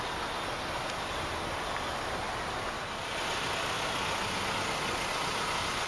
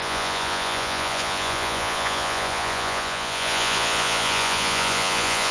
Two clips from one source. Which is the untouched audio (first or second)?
first